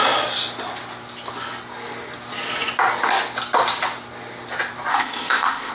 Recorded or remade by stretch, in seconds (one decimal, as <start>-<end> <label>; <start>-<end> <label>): 0.0-4.9 recorded; 4.9-5.7 remade